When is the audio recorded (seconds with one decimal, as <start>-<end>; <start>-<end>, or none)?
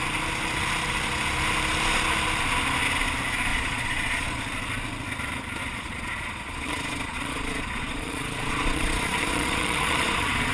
0.0-3.5; 4.4-5.6